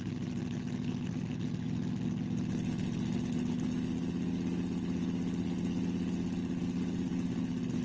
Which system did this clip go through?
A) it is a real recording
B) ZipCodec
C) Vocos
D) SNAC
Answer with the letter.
A